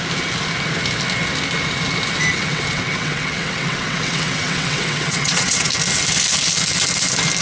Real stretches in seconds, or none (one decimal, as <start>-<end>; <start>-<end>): 0.0-2.3; 5.7-7.4